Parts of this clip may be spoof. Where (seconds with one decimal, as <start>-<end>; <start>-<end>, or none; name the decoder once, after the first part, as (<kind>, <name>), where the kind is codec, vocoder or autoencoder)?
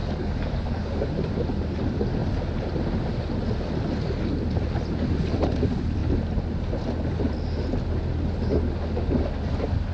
0.0-1.1 (codec, DAC)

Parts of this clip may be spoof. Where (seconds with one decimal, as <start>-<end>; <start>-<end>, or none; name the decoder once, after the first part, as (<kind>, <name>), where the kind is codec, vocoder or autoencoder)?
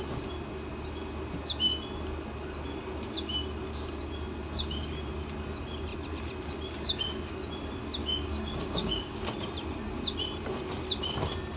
8.0-9.2 (codec, DAC)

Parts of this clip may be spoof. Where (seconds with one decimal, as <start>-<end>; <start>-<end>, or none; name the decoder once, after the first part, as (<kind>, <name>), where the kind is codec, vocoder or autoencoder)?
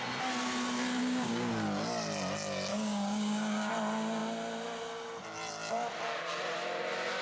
1.0-1.5 (codec, DAC); 2.7-3.7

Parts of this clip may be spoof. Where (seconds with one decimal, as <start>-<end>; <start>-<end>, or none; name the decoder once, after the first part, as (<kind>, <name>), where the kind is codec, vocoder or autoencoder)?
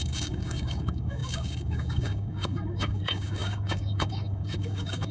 0.0-5.1 (codec, DAC)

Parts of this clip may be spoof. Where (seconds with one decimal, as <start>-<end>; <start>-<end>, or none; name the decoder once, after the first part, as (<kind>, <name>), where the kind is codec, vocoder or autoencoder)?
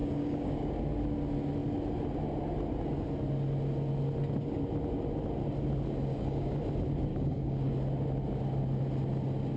0.0-0.8 (codec, DAC); 6.1-6.6; 7.1-7.7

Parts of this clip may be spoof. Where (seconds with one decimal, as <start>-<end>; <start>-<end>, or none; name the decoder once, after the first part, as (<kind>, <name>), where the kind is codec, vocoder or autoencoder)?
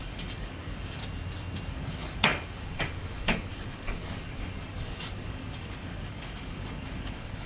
0.0-1.0 (codec, DAC); 1.7-7.5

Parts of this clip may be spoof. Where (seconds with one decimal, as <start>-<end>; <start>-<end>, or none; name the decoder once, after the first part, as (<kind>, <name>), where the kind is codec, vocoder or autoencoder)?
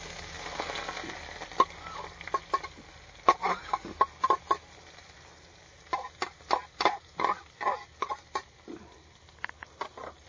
3.4-4.0 (codec, DAC)